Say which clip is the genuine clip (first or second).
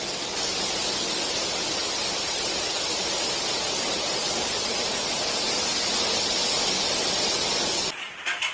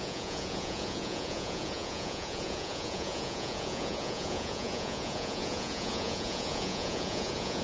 first